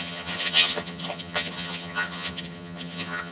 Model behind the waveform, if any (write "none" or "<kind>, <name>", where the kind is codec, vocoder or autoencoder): vocoder, HiFi-GAN